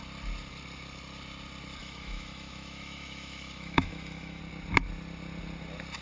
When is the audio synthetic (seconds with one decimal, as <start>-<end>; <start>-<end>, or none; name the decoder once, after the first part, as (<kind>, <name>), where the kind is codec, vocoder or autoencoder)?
1.8-4.4 (autoencoder, DAC-VAE)